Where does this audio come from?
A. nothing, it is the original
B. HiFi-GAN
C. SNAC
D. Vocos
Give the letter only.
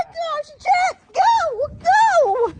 A